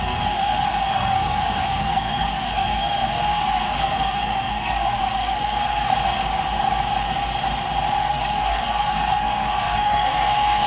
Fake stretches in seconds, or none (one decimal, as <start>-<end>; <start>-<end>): 0.0-5.9; 8.0-10.7